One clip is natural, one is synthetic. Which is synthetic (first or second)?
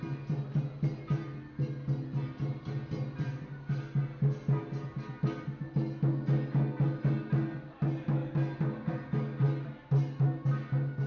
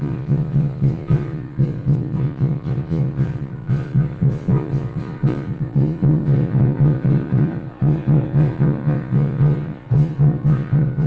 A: second